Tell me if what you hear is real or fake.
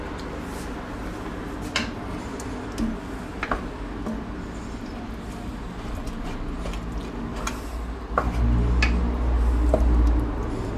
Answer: real